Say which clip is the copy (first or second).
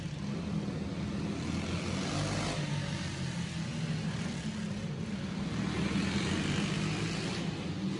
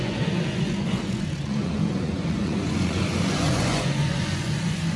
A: second